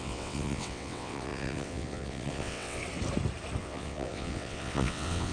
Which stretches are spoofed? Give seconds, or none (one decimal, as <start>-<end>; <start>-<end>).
0.0-2.8; 3.6-5.3